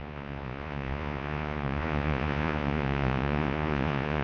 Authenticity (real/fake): fake